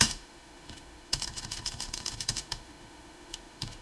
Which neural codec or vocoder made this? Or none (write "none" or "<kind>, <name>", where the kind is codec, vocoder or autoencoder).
autoencoder, DAC-VAE